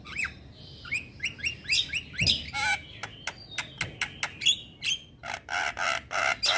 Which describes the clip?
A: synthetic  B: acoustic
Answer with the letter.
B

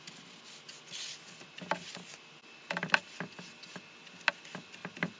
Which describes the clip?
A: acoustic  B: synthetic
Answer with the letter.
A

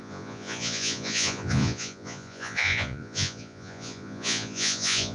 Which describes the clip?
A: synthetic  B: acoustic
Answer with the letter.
A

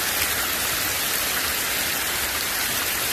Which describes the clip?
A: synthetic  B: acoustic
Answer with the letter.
B